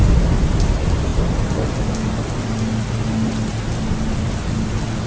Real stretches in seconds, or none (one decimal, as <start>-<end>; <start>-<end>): 0.0-5.1